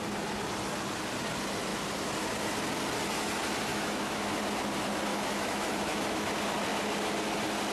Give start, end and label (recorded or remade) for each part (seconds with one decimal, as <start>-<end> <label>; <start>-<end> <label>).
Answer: 0.0-3.7 recorded; 3.7-4.4 remade; 4.4-5.1 recorded; 5.1-6.3 remade; 6.3-7.7 recorded